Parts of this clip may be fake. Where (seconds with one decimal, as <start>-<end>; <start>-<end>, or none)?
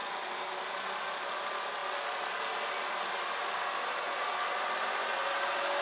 none